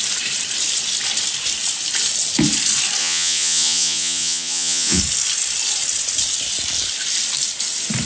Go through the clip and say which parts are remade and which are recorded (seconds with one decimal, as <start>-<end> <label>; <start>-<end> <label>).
0.0-3.0 recorded; 3.0-5.0 remade; 5.0-8.1 recorded